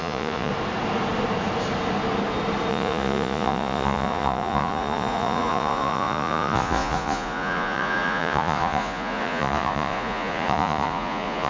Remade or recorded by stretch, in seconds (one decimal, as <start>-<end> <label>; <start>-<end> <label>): 0.0-0.5 remade; 0.5-2.7 recorded; 2.7-11.5 remade